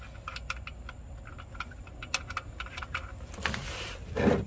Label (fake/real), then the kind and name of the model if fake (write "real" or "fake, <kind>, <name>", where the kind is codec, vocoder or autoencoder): real